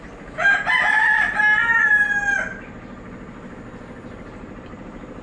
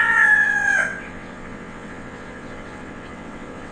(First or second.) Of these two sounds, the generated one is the second